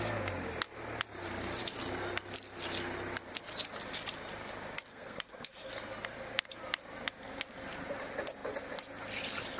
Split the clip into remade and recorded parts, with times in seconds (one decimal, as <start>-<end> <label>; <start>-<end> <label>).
0.0-4.9 recorded; 4.9-5.7 remade; 5.7-9.6 recorded